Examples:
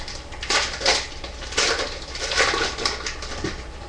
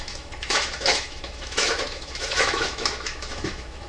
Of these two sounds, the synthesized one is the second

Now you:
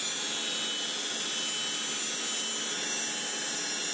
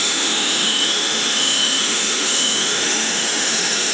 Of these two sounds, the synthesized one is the second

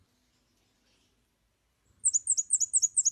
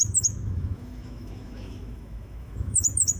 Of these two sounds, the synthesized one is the second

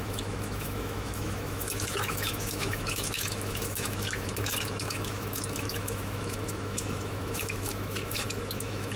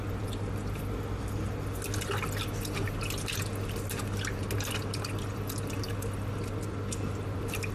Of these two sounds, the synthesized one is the first